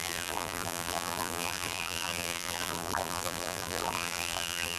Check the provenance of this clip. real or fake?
fake